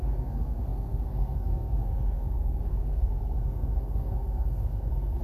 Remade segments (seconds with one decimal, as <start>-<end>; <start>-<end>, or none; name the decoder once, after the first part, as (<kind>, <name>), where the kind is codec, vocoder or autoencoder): 0.0-5.2 (codec, SNAC)